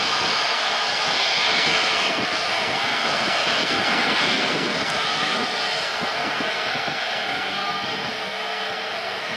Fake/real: fake